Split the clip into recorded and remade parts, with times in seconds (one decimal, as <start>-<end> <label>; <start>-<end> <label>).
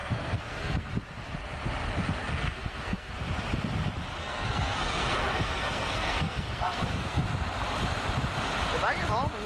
0.0-0.9 remade; 0.9-2.2 recorded; 2.2-3.1 remade; 3.1-4.2 recorded; 4.2-7.2 remade; 7.2-9.5 recorded